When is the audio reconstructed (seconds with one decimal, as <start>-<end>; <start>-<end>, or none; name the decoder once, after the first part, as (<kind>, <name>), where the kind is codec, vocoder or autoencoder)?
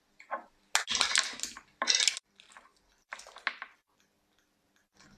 none